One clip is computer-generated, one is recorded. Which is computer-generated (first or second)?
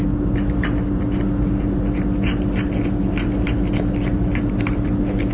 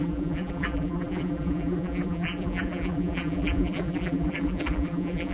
second